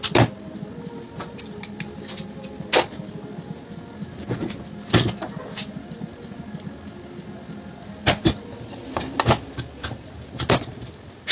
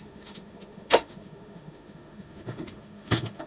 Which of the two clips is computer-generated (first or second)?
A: second